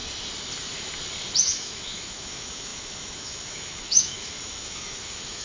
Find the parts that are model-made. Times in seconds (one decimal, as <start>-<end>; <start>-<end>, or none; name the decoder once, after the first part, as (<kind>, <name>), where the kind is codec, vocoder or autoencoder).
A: 1.4-5.4 (autoencoder, DAC-VAE)